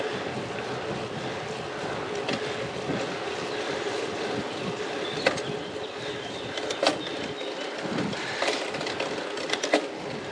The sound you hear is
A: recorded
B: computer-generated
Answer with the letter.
A